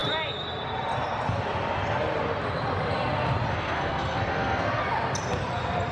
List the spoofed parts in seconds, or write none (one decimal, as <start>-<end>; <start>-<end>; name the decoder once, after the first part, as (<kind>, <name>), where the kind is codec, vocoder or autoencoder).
3.5-4.8 (codec, SNAC)